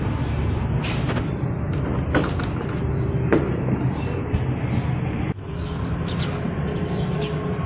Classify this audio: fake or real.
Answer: real